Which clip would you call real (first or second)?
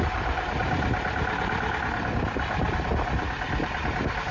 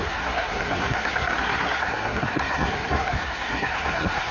first